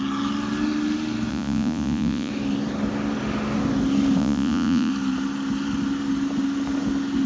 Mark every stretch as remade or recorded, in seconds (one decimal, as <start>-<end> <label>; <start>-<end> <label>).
0.0-1.3 recorded; 1.3-2.3 remade; 2.3-4.2 recorded; 4.2-4.9 remade; 4.9-7.3 recorded